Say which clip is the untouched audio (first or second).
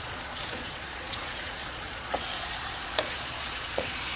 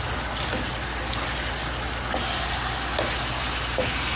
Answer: second